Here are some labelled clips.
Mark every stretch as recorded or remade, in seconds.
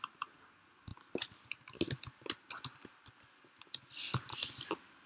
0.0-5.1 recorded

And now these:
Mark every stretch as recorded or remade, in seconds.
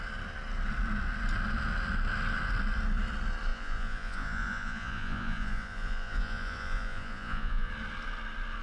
0.0-3.5 recorded; 3.5-7.7 remade; 7.7-8.6 recorded